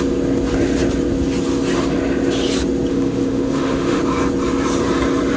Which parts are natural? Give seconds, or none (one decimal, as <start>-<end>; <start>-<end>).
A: 0.0-2.9; 4.0-5.4